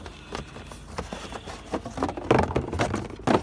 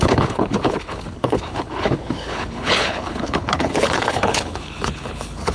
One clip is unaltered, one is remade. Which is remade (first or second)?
second